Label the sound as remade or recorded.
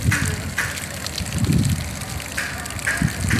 recorded